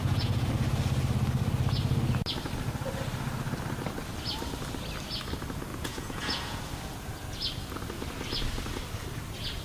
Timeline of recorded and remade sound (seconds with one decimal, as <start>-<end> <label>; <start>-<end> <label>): 0.0-0.5 remade; 0.5-5.7 recorded; 5.7-6.6 remade; 6.6-9.6 recorded